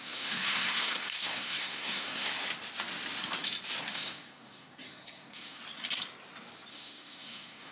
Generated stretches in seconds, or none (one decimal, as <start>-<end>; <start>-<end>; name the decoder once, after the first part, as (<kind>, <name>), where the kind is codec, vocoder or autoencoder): 0.0-2.4 (codec, SNAC); 3.8-5.6; 6.7-7.7